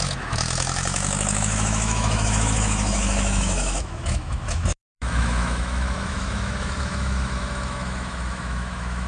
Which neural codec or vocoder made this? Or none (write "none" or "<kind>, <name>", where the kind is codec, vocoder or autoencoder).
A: autoencoder, DAC-VAE